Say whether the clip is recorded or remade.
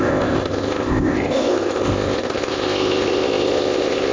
remade